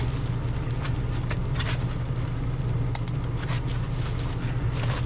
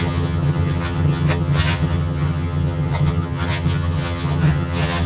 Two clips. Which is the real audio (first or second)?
first